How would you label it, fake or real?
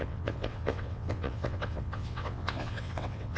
fake